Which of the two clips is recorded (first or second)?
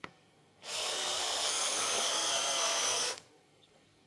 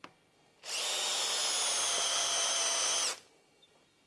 second